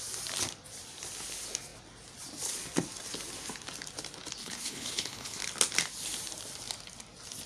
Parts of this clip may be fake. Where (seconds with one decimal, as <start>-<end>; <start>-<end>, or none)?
4.4-5.4